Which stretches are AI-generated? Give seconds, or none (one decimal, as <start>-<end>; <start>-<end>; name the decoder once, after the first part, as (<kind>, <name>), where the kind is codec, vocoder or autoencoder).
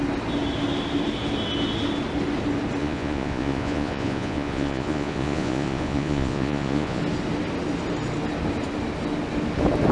2.8-7.0 (vocoder, Vocos)